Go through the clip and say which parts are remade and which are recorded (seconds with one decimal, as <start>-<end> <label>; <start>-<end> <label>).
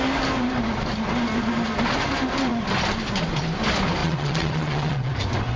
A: 0.0-4.0 recorded; 4.0-5.1 remade; 5.1-5.6 recorded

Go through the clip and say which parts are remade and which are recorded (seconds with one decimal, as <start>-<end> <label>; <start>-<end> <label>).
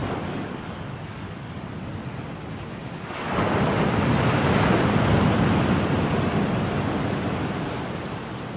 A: 0.0-1.7 remade; 1.7-8.6 recorded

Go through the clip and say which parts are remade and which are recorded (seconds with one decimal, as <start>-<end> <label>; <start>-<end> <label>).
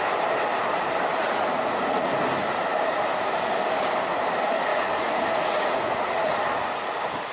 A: 0.0-1.1 recorded; 1.1-2.1 remade; 2.1-4.7 recorded; 4.7-6.4 remade; 6.4-7.3 recorded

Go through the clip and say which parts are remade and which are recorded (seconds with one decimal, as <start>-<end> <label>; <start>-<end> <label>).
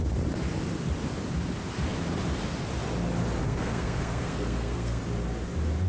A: 0.0-3.4 recorded; 3.4-5.0 remade; 5.0-5.9 recorded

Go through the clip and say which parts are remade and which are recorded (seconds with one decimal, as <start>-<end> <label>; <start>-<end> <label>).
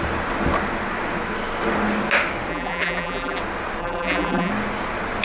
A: 0.0-2.5 recorded; 2.5-3.4 remade; 3.4-3.8 recorded; 3.8-4.5 remade; 4.5-5.2 recorded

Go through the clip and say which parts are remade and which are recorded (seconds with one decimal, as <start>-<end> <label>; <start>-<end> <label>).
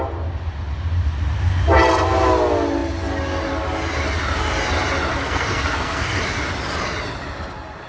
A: 0.0-5.1 recorded; 5.1-6.2 remade; 6.2-7.9 recorded